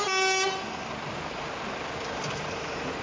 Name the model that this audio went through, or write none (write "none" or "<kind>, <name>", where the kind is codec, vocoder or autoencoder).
none